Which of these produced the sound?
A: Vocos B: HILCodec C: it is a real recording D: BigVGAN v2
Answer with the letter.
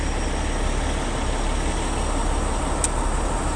C